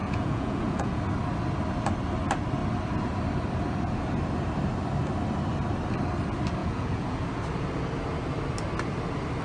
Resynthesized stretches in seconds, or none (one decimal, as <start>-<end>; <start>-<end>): 0.0-1.0; 6.6-7.2